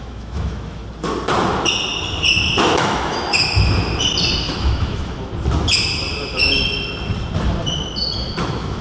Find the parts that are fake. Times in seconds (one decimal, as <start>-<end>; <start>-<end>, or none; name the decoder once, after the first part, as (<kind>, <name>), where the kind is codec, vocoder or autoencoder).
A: 0.0-0.8 (autoencoder, DAC-VAE); 2.6-3.3; 4.4-5.3; 8.4-8.8